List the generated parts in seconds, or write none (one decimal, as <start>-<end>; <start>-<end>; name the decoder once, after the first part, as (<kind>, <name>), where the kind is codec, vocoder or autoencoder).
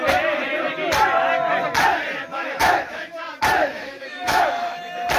2.3-3.2 (autoencoder, DAC-VAE); 3.6-4.8